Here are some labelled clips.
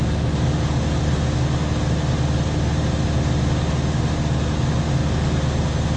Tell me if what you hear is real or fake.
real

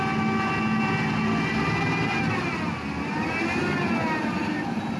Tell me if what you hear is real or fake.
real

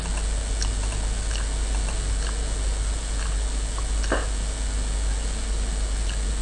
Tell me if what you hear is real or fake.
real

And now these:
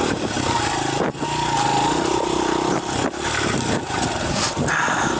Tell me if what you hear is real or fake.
real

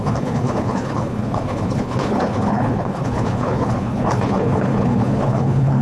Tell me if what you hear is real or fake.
fake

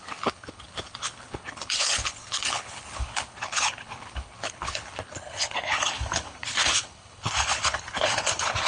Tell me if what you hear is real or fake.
fake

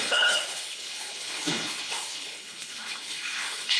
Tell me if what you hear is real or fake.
fake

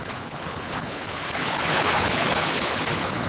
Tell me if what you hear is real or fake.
fake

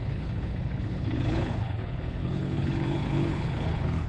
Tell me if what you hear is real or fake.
fake